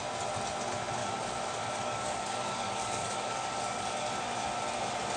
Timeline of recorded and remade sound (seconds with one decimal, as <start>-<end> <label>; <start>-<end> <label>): 0.0-1.0 recorded; 1.0-4.1 remade; 4.1-5.2 recorded